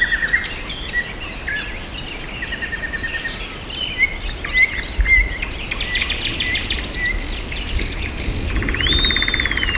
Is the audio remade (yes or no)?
no